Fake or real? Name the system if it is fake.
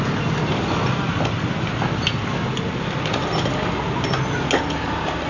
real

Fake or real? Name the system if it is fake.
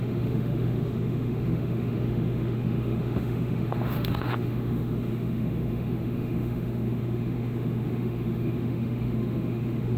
fake, autoencoder, DAC-VAE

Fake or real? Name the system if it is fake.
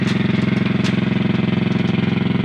real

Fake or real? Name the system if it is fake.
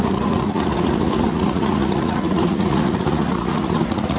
fake, vocoder, Vocos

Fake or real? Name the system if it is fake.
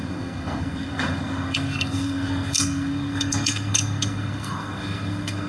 fake, codec, SNAC